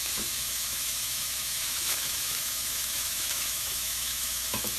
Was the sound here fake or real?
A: fake